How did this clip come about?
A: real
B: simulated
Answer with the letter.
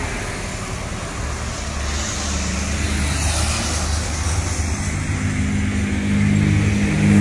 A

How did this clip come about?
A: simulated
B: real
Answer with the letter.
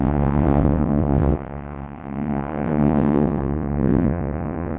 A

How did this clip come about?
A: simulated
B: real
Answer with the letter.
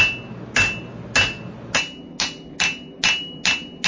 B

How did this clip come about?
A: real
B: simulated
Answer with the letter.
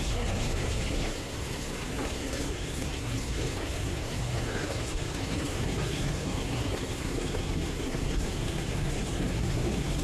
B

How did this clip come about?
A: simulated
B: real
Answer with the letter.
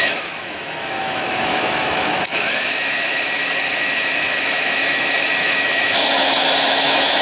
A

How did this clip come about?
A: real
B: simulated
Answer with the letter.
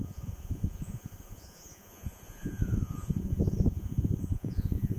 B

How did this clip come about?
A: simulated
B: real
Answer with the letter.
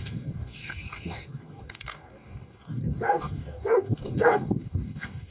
A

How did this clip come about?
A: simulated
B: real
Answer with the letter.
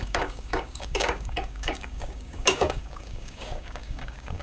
A